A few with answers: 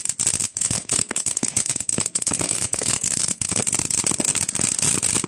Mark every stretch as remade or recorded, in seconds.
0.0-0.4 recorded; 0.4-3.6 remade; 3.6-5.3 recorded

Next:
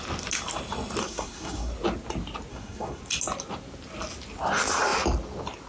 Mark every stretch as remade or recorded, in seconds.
0.0-1.0 recorded; 1.0-1.7 remade; 1.7-2.5 recorded; 2.5-3.0 remade; 3.0-5.7 recorded

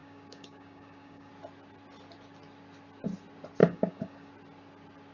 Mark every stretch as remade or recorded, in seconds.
0.0-1.3 remade; 1.3-3.6 recorded; 3.6-4.3 remade; 4.3-5.1 recorded